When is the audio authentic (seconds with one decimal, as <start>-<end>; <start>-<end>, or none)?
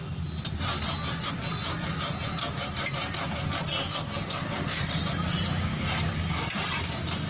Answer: 0.0-3.8; 4.8-7.3